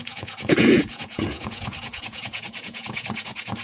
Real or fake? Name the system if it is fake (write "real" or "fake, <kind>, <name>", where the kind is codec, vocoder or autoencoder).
fake, vocoder, Vocos